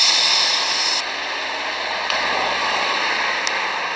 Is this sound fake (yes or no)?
no